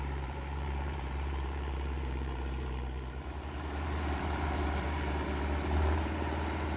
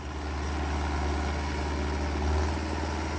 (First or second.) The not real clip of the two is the first